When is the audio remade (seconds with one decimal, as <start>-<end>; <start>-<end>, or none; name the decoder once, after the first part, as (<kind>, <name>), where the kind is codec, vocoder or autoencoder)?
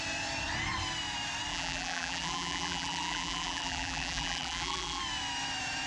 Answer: 1.5-5.0 (vocoder, BigVGAN v2)